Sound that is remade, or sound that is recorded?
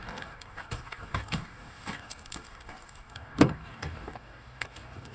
remade